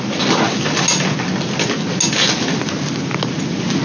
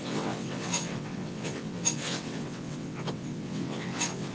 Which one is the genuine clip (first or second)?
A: first